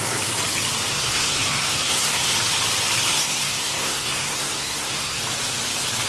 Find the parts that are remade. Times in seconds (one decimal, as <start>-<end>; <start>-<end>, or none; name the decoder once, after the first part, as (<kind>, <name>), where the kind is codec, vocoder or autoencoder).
0.9-2.3 (codec, SNAC); 3.1-5.2